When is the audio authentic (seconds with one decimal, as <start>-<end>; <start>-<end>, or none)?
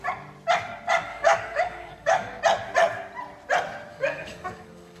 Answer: 0.0-1.1; 2.4-3.9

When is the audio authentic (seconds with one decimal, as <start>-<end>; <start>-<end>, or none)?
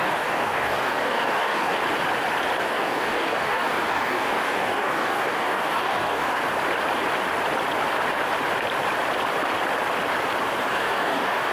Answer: 1.8-2.6; 6.4-10.6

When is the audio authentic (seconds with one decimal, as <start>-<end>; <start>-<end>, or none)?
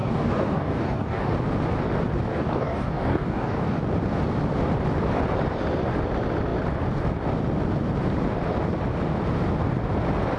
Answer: 1.3-2.3; 3.8-10.4